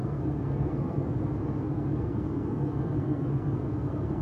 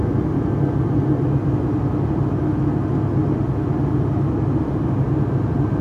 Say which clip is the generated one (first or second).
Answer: first